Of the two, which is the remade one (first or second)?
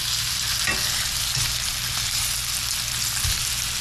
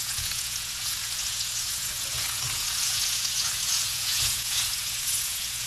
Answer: second